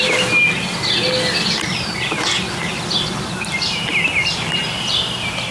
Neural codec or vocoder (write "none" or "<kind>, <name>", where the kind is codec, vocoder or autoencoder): none